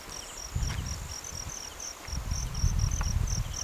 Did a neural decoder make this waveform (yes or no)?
no